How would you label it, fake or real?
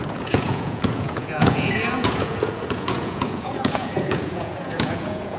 fake